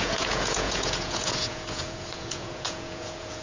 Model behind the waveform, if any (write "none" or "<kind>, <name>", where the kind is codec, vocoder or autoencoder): vocoder, Vocos